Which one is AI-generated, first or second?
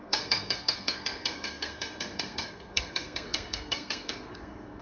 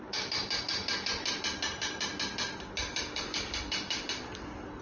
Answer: first